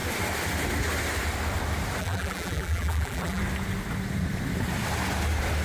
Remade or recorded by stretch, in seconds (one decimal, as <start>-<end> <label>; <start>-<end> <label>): 0.0-2.0 recorded; 2.0-3.4 remade; 3.4-5.6 recorded